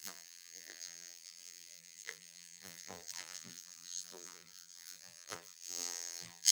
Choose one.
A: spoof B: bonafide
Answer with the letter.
A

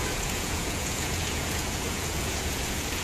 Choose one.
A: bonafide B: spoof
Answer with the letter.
B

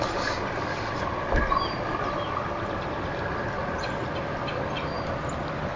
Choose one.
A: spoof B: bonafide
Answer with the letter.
B